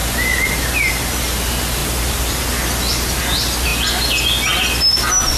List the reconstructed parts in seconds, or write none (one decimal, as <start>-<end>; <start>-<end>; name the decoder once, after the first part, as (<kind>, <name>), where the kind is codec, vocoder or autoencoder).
none